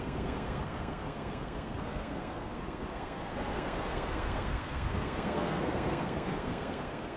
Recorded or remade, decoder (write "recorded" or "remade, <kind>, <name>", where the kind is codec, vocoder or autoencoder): remade, codec, SNAC